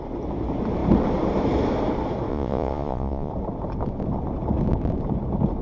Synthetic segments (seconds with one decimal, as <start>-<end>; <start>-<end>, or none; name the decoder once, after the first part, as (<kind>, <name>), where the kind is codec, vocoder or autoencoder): 2.3-3.3 (vocoder, Vocos)